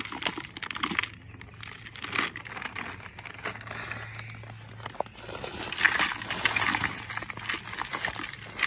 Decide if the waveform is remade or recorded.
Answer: recorded